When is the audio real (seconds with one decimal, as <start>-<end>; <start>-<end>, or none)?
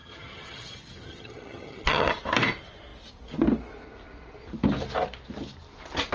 2.1-6.1